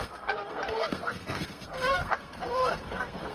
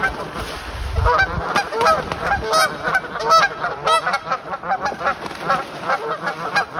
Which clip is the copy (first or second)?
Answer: first